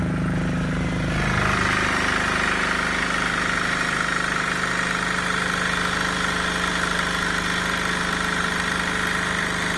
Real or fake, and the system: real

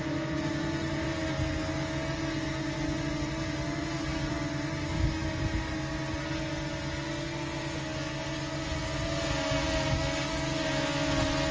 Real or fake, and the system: real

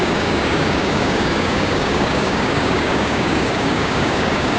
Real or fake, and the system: fake, codec, DAC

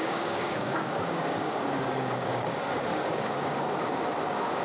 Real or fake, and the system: fake, codec, DAC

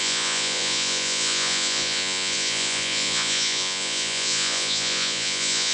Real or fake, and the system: fake, vocoder, Vocos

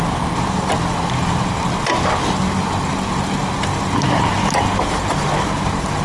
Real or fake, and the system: real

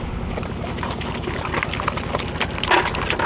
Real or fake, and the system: real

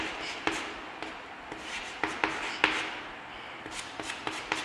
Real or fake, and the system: fake, vocoder, BigVGAN v2